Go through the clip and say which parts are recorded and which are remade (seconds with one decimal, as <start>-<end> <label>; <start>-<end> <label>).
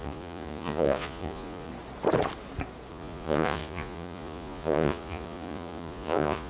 0.0-1.7 remade; 1.7-2.9 recorded; 2.9-6.5 remade